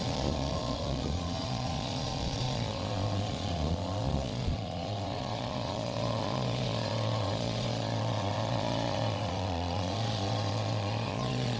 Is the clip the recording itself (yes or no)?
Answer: no